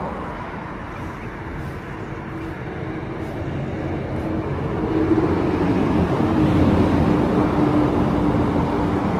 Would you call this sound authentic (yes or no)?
yes